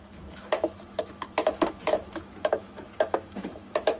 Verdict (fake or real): fake